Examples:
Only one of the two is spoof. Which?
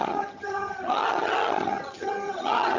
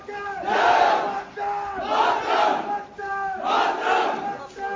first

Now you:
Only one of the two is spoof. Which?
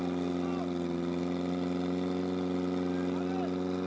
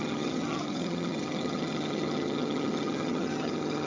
second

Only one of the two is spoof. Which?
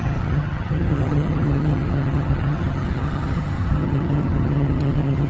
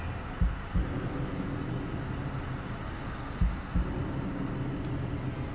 first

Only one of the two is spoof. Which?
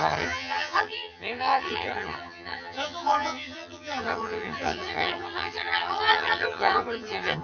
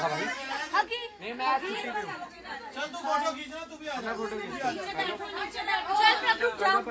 first